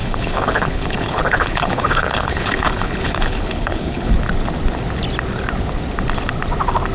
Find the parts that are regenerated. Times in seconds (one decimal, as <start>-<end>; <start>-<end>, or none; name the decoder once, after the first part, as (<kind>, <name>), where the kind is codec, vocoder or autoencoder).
0.0-4.1 (codec, HILCodec)

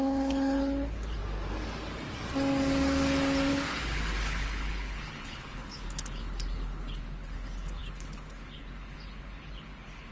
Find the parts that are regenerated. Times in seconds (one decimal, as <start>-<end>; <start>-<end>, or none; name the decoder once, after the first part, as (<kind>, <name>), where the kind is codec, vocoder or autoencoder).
0.0-1.2 (codec, HILCodec); 3.5-10.1

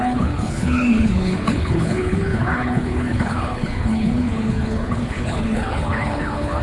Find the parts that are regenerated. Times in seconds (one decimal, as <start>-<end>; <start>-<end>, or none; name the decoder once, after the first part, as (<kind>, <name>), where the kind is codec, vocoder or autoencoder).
0.0-6.6 (codec, HILCodec)

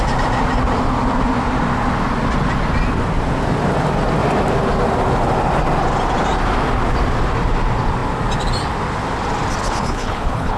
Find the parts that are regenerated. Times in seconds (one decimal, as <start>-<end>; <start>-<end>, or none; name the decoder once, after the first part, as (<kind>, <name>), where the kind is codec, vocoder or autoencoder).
9.6-10.6 (codec, HILCodec)